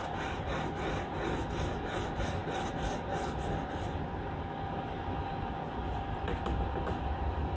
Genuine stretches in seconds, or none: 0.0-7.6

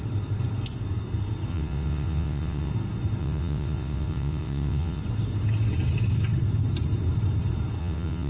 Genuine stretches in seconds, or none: 0.0-1.5; 2.7-3.2; 5.0-7.8

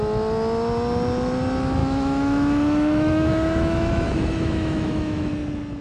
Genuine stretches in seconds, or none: 0.0-1.8; 5.3-5.8

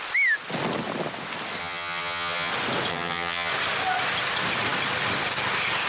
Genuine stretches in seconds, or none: 0.0-1.6; 2.5-2.9; 3.5-5.9